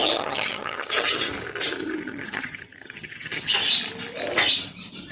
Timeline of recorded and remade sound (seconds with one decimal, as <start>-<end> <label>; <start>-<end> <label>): 0.0-1.3 remade; 1.3-1.8 recorded; 1.8-3.5 remade; 3.5-5.1 recorded